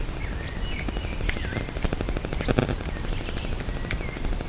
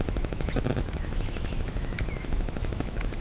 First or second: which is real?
first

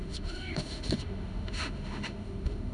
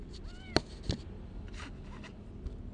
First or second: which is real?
second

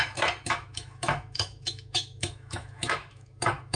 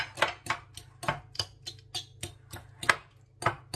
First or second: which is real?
second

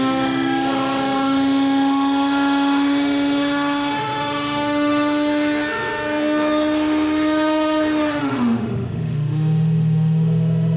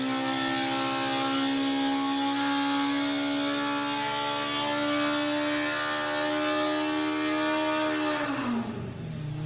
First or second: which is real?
second